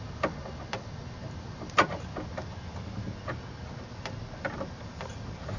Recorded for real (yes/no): yes